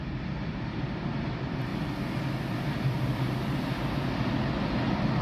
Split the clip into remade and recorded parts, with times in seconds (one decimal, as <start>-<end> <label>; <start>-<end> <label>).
0.0-1.7 remade; 1.7-4.8 recorded; 4.8-5.2 remade